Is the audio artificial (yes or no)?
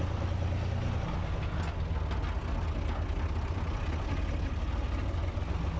no